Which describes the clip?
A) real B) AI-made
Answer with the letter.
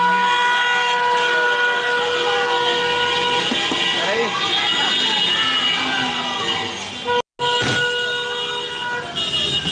A